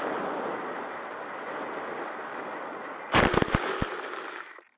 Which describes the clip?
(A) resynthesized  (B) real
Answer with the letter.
B